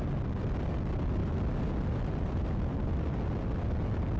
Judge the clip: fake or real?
real